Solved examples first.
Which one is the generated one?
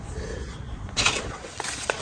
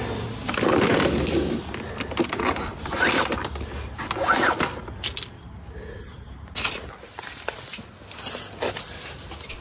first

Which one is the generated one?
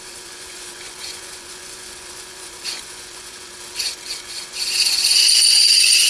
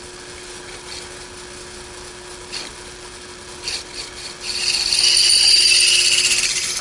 first